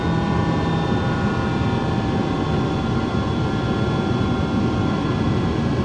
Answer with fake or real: real